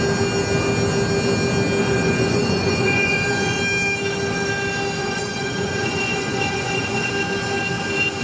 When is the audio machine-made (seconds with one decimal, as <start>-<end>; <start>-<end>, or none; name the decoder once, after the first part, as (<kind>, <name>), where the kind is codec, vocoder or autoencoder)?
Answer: 1.8-3.6 (vocoder, Vocos); 5.0-7.1